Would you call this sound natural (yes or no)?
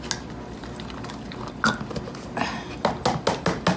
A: yes